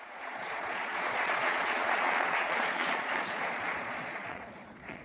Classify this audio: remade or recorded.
remade